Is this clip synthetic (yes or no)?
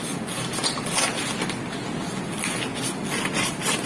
no